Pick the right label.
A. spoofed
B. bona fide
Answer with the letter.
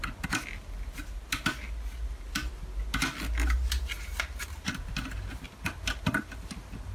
B